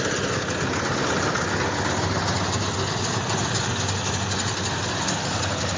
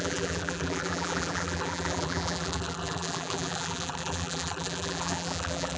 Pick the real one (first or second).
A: first